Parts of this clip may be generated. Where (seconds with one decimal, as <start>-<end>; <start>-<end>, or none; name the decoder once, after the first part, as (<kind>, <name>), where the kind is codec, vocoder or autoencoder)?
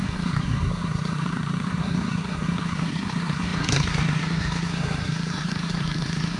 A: 0.0-6.4 (codec, SNAC)